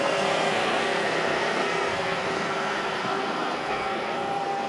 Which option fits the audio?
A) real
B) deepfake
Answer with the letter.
B